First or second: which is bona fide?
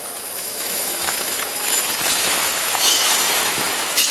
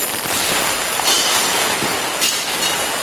second